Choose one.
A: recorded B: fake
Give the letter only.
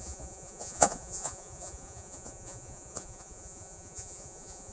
B